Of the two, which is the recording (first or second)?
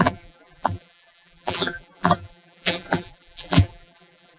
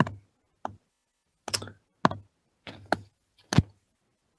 second